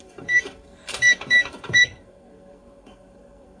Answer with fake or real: fake